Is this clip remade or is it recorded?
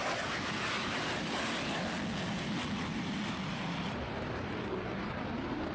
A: recorded